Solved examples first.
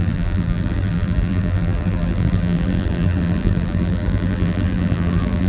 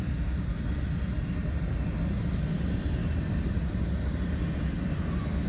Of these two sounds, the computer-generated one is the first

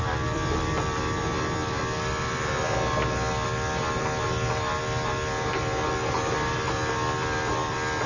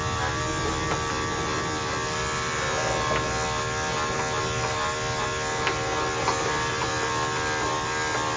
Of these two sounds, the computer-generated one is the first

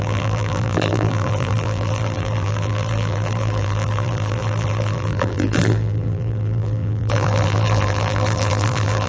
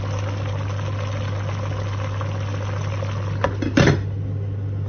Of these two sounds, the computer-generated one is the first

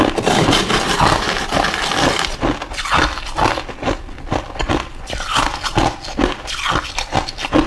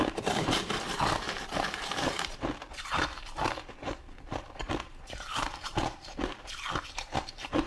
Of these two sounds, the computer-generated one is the second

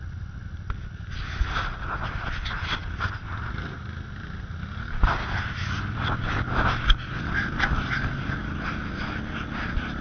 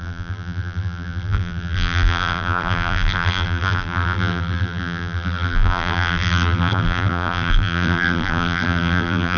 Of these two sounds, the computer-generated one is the second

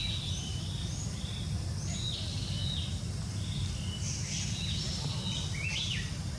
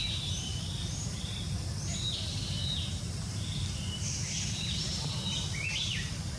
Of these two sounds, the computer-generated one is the second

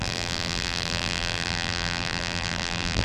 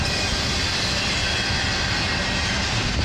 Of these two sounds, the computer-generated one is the first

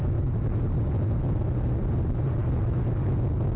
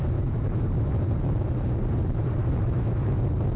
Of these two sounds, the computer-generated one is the second